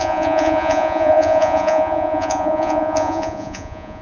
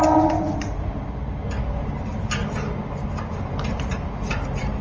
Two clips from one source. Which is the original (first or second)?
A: second